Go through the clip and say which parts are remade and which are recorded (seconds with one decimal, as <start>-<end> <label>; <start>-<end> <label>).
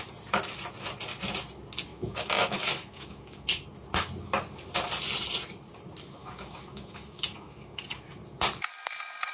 0.0-1.9 recorded; 1.9-3.5 remade; 3.5-6.2 recorded; 6.2-7.8 remade; 7.8-9.3 recorded